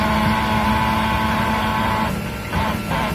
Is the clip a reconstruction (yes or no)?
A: no